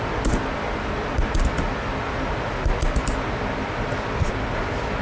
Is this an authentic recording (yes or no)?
yes